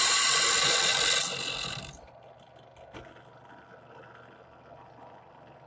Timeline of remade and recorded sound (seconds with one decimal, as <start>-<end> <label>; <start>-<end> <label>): 0.0-5.7 recorded